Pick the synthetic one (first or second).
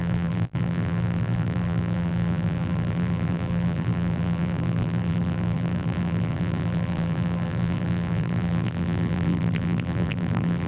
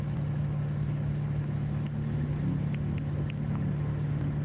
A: first